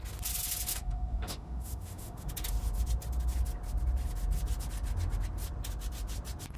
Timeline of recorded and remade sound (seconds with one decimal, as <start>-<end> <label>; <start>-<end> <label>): 0.0-0.7 recorded; 0.7-2.3 remade; 2.3-6.6 recorded

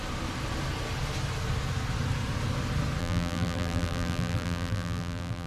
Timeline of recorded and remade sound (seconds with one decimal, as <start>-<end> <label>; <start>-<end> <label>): 0.0-3.0 recorded; 3.0-5.5 remade